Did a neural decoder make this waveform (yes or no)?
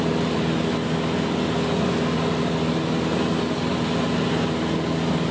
no